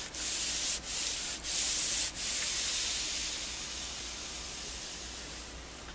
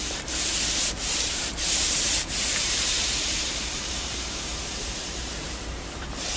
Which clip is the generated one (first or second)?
second